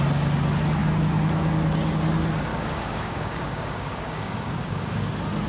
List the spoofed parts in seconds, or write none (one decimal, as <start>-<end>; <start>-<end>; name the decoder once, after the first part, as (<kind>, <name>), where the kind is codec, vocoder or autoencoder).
2.5-5.1 (codec, DAC)